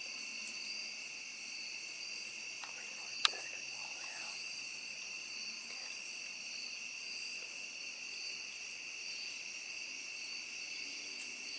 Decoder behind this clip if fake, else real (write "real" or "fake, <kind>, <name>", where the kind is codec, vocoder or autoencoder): real